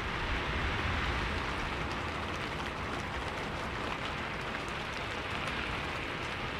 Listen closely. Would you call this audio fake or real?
real